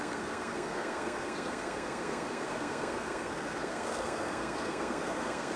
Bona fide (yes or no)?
no